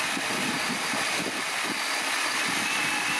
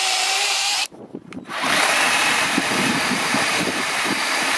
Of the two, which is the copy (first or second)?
second